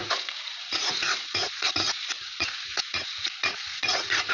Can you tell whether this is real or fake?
fake